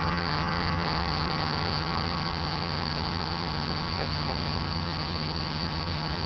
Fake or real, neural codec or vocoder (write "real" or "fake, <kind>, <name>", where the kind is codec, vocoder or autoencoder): fake, vocoder, HiFi-GAN